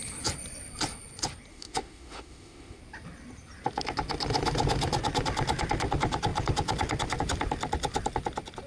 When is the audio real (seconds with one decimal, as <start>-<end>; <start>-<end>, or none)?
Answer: 0.0-1.5; 2.8-8.7